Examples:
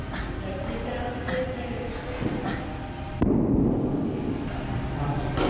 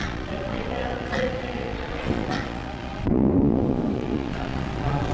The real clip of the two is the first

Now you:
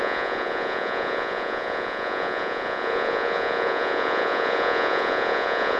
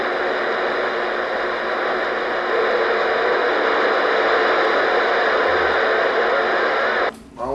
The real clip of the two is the second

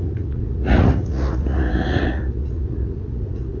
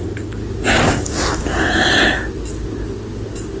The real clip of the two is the second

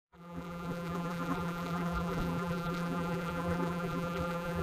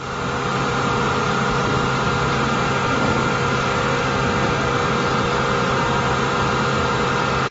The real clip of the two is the second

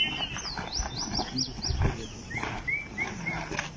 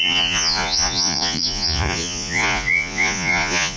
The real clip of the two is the first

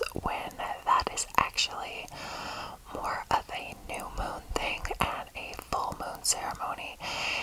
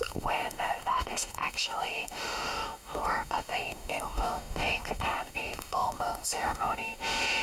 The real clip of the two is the first